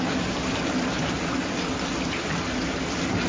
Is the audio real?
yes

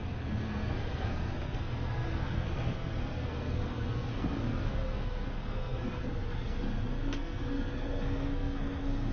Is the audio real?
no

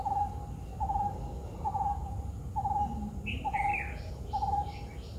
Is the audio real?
yes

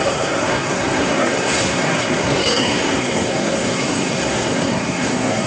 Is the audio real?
no